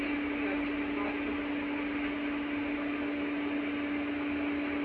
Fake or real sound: real